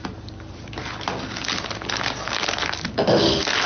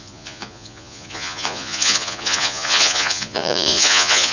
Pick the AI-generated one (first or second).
second